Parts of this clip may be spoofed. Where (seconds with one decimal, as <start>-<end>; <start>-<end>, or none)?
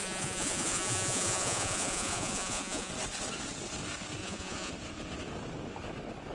0.0-2.9; 4.2-4.7